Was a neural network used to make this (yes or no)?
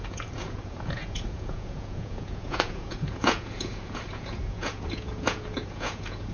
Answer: yes